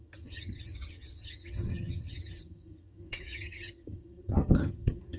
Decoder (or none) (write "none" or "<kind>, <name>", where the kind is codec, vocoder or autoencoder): vocoder, HiFi-GAN